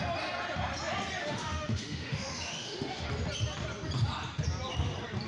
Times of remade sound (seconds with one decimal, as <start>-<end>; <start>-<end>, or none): 1.2-3.1